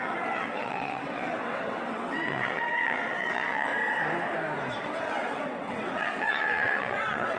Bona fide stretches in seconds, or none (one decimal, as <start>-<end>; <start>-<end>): 3.7-4.8